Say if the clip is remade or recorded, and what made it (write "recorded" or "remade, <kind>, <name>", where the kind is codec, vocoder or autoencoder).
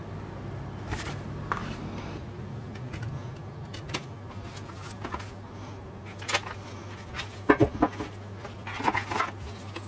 recorded